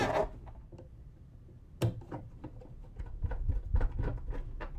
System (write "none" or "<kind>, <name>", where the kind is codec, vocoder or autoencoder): none